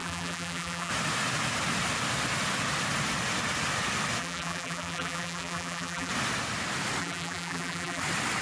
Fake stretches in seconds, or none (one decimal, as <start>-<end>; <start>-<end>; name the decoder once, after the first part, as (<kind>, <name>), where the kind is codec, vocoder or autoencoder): 0.0-0.9 (vocoder, BigVGAN v2); 4.2-6.1; 7.0-8.0